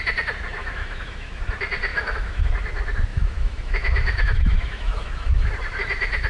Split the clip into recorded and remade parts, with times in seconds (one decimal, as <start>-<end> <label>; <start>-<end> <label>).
0.0-0.6 recorded; 0.6-1.4 remade; 1.4-1.9 recorded; 1.9-2.5 remade; 2.5-3.1 recorded; 3.1-5.5 remade; 5.5-6.3 recorded